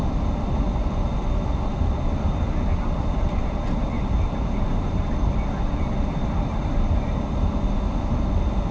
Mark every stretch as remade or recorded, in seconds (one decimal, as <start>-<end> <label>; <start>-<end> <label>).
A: 0.0-1.7 recorded; 1.7-5.0 remade; 5.0-6.2 recorded; 6.2-7.6 remade; 7.6-8.7 recorded